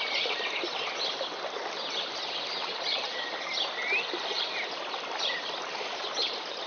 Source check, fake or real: real